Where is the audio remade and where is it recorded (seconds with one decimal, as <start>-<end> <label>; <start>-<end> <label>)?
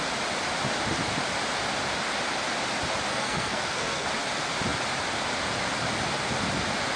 0.0-3.1 recorded; 3.1-4.1 remade; 4.1-7.0 recorded